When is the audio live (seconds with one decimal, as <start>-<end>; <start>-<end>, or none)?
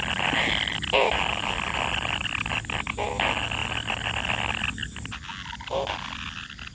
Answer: 0.0-6.7